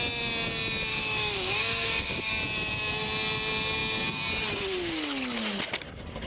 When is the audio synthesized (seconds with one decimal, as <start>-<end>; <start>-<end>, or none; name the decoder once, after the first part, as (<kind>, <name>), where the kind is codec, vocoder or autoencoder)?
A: 0.9-2.3 (codec, DAC)